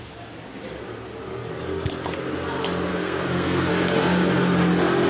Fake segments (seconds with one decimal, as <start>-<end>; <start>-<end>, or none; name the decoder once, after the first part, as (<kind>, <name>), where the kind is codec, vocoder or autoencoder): 2.9-3.7 (codec, SNAC)